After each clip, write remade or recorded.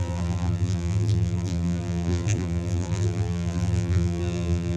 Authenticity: remade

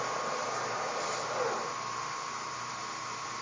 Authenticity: remade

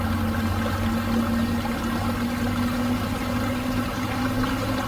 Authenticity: recorded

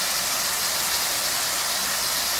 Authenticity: recorded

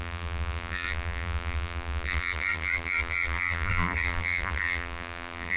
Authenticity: remade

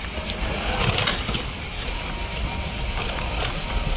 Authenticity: recorded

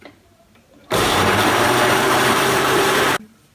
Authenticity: remade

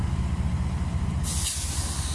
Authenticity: recorded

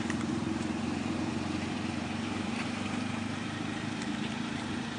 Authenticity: remade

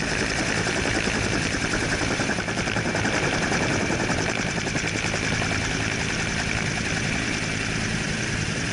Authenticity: remade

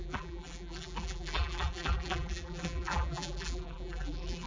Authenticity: remade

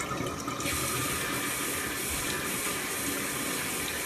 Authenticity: recorded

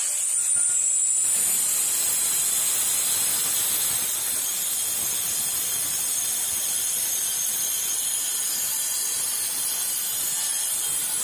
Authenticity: recorded